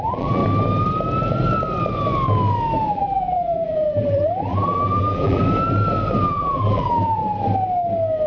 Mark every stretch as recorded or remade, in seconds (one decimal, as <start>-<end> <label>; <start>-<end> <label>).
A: 0.0-0.4 remade; 0.4-2.9 recorded; 2.9-5.4 remade; 5.4-6.2 recorded; 6.2-7.2 remade; 7.2-8.3 recorded